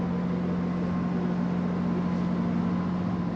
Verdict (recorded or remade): recorded